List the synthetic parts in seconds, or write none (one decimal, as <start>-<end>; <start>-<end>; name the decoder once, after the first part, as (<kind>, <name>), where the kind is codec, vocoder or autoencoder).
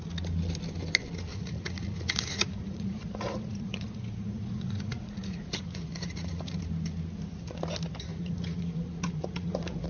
1.3-6.6 (vocoder, Vocos); 8.1-9.9